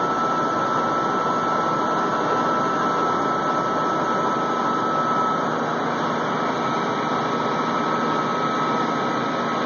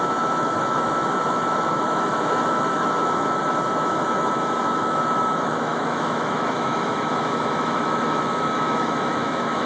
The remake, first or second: second